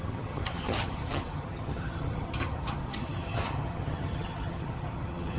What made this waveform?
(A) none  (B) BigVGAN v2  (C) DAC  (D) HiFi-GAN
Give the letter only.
D